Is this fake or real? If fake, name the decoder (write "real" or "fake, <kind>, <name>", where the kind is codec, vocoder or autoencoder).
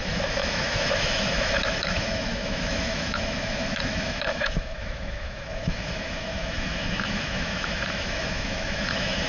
fake, autoencoder, DAC-VAE